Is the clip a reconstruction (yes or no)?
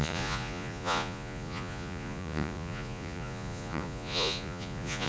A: yes